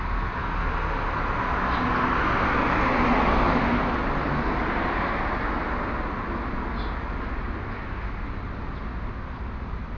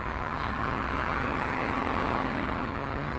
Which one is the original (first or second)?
first